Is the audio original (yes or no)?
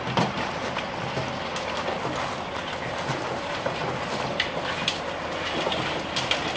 yes